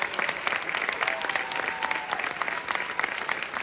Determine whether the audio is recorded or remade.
recorded